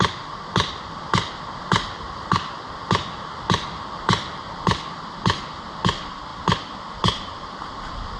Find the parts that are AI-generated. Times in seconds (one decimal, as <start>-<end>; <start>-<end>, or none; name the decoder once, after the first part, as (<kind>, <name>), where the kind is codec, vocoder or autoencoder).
none